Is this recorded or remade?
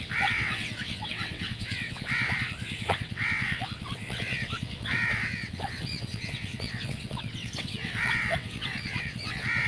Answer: remade